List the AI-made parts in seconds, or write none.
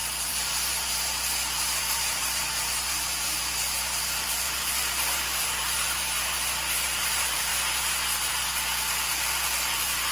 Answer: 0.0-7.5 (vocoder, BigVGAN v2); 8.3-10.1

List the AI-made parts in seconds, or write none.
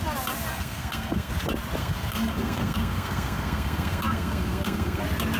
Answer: 0.5-1.3 (codec, SNAC); 1.8-5.0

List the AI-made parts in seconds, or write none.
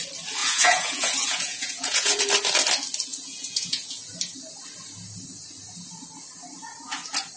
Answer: 0.4-2.2 (vocoder, Vocos); 3.1-4.1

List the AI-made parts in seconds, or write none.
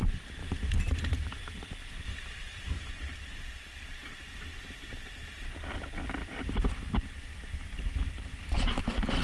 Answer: 0.4-2.9 (vocoder, BigVGAN v2); 6.2-6.8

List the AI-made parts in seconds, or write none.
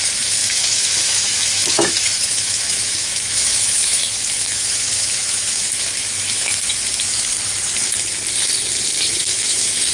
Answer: 0.0-7.3 (autoencoder, DAC-VAE); 9.1-9.9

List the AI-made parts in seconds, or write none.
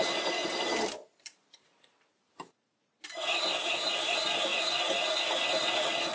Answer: 0.4-4.1 (vocoder, BigVGAN v2)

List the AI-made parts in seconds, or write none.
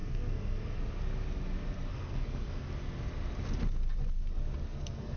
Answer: 0.0-0.8 (codec, SNAC); 1.9-2.7; 4.7-5.2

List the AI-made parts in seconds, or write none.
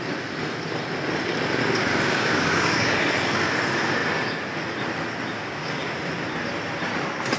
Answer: 1.6-3.0 (codec, DAC); 5.4-6.0